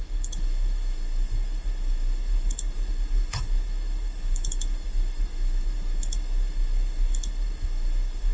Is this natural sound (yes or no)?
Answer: no